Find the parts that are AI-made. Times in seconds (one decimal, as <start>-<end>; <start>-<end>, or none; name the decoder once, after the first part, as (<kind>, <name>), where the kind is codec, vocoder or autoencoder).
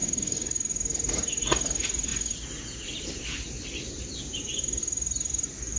0.0-0.7 (codec, DAC)